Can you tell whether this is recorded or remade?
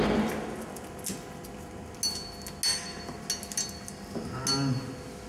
recorded